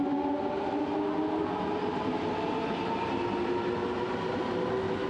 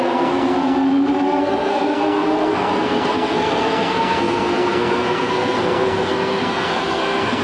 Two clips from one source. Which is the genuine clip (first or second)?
first